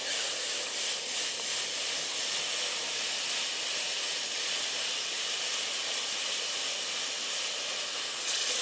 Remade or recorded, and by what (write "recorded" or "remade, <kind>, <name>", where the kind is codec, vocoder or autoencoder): recorded